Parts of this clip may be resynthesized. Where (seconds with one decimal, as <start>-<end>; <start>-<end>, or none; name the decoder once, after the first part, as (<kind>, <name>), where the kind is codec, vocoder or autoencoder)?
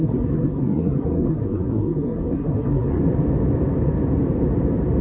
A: 0.0-3.0 (codec, SNAC)